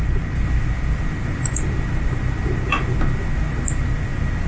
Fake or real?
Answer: real